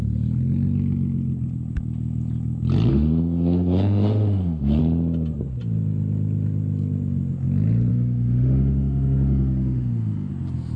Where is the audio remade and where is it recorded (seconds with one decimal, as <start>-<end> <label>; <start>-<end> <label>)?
0.0-2.9 recorded; 2.9-4.8 remade; 4.8-7.9 recorded; 7.9-10.3 remade; 10.3-10.8 recorded